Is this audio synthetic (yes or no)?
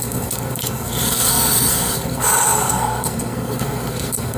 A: yes